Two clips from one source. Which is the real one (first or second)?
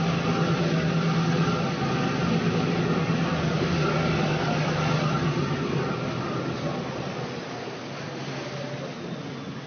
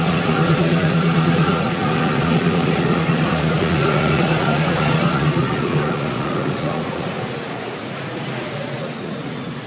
first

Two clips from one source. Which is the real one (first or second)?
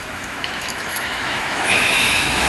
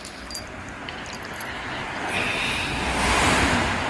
second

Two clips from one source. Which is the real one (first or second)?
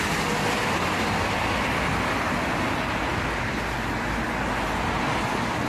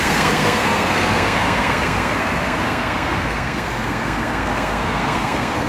first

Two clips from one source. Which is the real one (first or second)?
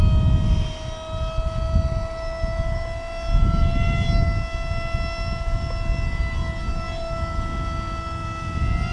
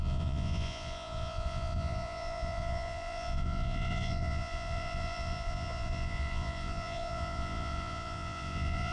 first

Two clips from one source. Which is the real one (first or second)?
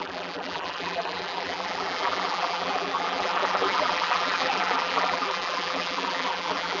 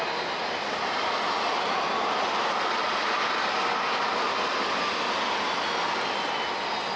second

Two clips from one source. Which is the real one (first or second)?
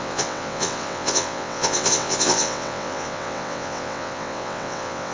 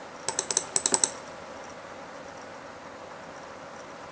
second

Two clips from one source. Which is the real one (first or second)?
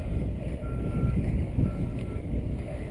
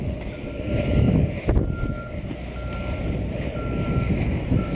second